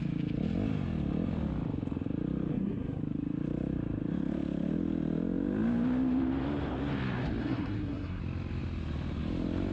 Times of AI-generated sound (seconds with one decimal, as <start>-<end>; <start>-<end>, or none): 2.5-3.0; 7.4-8.2